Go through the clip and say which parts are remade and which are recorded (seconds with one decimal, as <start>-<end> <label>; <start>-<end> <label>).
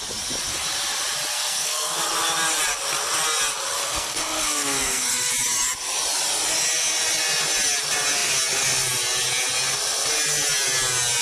0.0-1.3 recorded; 1.3-2.0 remade; 2.0-3.8 recorded; 3.8-5.3 remade; 5.3-11.2 recorded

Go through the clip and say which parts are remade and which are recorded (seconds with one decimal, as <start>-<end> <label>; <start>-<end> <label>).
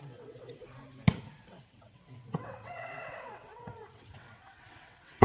0.0-0.6 remade; 0.6-1.5 recorded; 1.5-5.2 remade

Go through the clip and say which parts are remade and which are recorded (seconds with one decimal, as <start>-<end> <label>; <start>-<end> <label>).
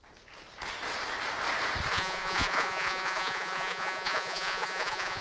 0.0-1.9 recorded; 1.9-5.2 remade